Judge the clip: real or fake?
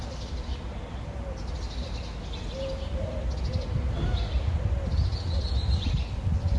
real